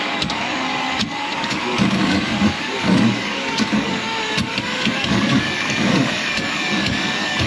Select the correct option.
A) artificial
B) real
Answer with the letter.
A